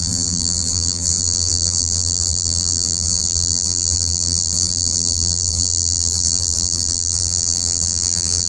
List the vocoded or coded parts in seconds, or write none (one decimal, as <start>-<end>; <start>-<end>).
0.0-8.5